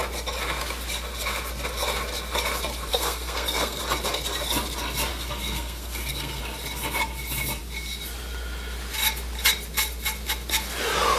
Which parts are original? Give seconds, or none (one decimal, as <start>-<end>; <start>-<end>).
0.0-2.9; 3.8-5.1; 6.4-11.2